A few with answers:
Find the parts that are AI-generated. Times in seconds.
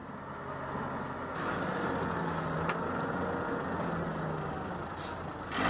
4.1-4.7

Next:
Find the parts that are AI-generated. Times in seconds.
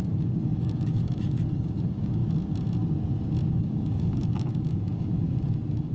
0.0-2.2; 3.5-5.9